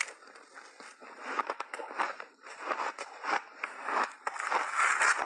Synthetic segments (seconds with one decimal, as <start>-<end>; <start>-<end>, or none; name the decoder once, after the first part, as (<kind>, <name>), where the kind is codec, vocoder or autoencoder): 1.0-4.2 (vocoder, BigVGAN v2)